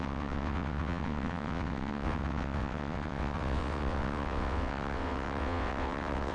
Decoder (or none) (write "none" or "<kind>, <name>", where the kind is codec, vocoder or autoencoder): vocoder, WaveNeXt